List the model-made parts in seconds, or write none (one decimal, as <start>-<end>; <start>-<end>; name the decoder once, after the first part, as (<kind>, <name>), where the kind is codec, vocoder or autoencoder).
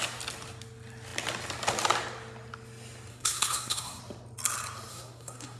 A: 3.1-4.0 (codec, SNAC); 4.9-5.6